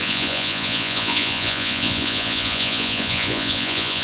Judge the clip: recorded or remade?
remade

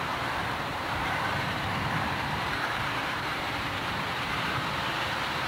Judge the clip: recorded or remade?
remade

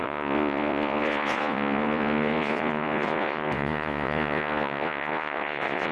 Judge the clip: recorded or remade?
remade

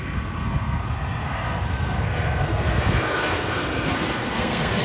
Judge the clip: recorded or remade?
remade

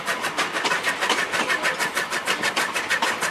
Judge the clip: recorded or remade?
recorded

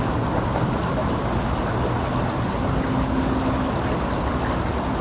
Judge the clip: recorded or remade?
recorded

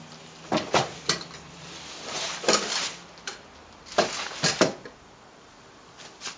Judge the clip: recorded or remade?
recorded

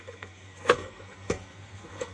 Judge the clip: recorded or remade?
remade